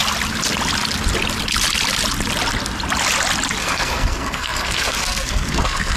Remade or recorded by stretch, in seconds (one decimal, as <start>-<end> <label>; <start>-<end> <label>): 0.0-3.6 recorded; 3.6-6.0 remade